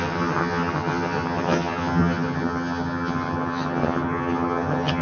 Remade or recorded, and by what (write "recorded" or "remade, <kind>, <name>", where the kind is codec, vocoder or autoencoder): remade, vocoder, HiFi-GAN